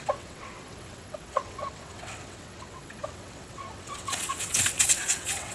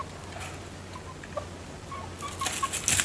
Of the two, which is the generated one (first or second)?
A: first